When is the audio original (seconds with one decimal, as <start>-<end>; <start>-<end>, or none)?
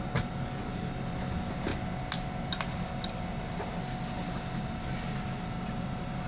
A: 0.0-6.3